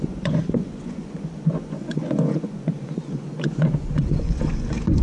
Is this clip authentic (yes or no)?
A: no